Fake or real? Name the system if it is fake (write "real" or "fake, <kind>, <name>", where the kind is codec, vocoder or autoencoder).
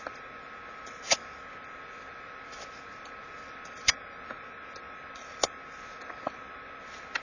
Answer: real